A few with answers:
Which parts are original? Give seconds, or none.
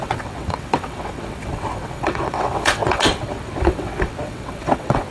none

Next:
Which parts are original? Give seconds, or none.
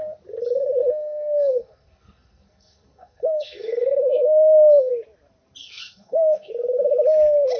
0.0-0.8; 4.9-5.6; 6.5-7.6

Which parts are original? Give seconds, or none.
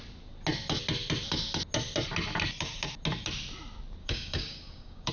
0.0-4.0